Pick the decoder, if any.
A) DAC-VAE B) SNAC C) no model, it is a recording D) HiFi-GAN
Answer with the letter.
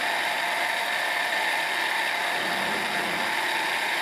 C